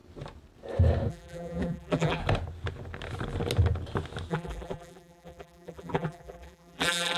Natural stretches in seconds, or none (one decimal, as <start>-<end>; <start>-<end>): 0.0-1.1; 2.2-4.3